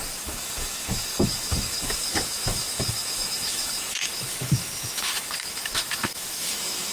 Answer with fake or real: fake